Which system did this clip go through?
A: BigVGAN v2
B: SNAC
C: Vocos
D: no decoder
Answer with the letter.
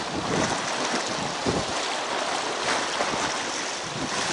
D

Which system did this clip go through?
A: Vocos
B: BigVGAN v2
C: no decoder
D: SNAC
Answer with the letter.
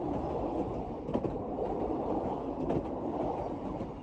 C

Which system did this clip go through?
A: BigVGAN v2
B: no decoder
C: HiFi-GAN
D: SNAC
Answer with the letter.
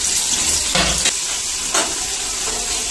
B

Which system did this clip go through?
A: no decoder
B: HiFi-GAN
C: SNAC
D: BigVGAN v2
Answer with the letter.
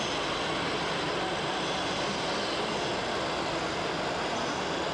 A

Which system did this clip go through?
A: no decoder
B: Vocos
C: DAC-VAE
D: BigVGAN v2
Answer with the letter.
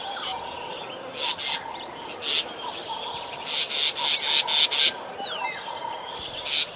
A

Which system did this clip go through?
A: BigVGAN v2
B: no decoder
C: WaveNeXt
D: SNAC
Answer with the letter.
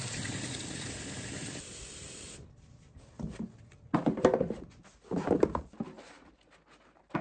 B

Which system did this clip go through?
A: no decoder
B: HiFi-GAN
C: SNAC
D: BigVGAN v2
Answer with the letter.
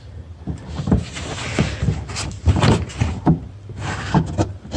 A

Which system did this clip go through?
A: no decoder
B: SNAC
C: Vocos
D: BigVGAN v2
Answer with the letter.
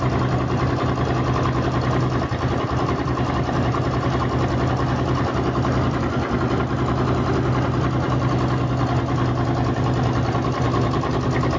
A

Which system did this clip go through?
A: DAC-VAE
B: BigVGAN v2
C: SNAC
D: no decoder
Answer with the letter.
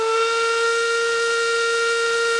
D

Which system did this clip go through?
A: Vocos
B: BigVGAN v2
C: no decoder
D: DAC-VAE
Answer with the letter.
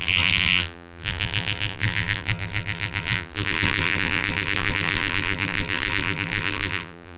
B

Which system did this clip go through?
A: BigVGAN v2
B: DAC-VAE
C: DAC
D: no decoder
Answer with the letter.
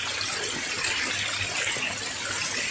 D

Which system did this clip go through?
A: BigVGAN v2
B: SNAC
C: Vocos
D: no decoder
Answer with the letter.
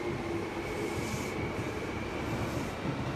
D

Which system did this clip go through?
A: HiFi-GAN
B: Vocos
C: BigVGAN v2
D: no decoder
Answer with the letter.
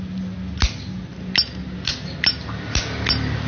D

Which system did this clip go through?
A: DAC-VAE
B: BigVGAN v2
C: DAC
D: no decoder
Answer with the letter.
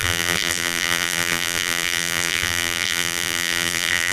B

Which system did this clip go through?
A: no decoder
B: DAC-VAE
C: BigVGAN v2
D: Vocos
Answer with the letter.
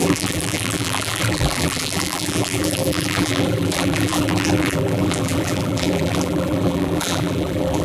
C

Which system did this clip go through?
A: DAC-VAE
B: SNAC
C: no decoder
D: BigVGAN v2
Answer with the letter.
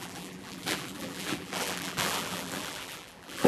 D